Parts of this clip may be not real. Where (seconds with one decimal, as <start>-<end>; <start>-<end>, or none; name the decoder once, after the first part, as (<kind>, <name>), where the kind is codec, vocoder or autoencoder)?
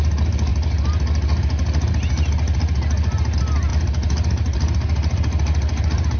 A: none